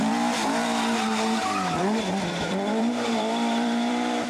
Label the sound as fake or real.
fake